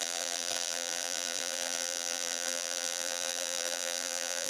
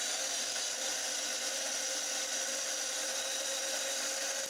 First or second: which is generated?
first